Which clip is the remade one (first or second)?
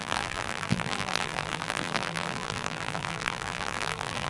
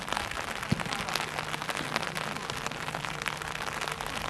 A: first